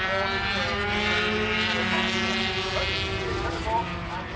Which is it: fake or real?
real